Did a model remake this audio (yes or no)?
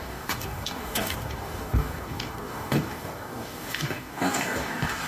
yes